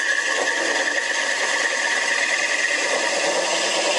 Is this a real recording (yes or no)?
yes